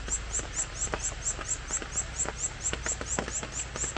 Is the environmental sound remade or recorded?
recorded